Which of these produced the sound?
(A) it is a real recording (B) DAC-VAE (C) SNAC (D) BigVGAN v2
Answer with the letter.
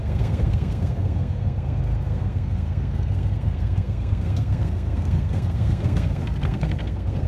C